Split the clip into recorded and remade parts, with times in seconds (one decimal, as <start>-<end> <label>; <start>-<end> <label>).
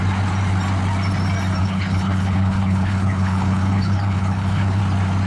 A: 0.0-1.6 recorded; 1.6-4.8 remade; 4.8-5.3 recorded